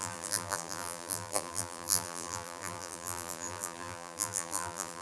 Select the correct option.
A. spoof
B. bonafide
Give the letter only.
A